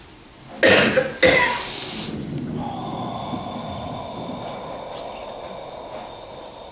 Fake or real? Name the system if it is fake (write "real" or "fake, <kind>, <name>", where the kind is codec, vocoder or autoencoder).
real